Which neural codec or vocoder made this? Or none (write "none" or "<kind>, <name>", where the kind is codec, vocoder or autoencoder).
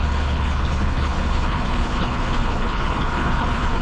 codec, HILCodec